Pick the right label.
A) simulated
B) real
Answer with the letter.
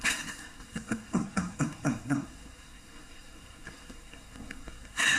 A